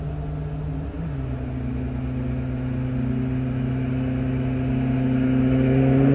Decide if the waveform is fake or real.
real